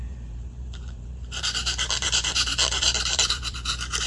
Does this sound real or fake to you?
fake